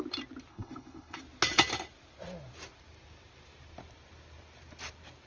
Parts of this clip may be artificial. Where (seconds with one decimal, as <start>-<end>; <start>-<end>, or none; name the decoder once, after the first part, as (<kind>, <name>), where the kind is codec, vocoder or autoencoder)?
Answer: 0.5-1.2 (codec, HILCodec)